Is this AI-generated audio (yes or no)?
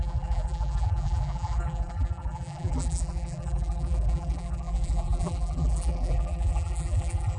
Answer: yes